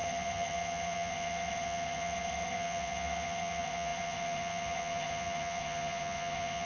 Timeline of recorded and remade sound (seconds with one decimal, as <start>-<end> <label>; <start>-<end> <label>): 0.0-6.7 remade